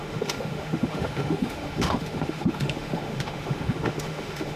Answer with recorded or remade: remade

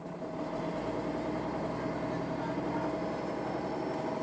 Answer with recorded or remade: recorded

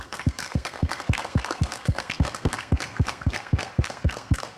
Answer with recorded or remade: remade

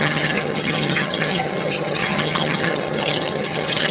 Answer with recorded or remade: remade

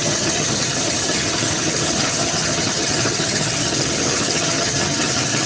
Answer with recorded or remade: remade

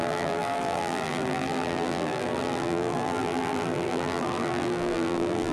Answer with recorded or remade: remade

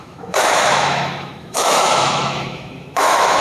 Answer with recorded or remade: remade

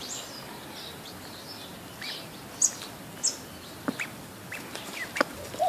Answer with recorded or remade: recorded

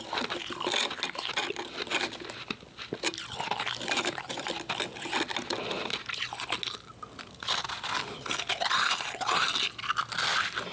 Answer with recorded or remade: recorded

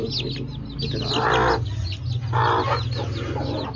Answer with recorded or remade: recorded